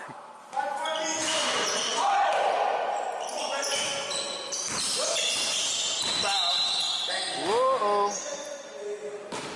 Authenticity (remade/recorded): recorded